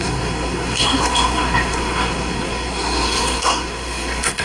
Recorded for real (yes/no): no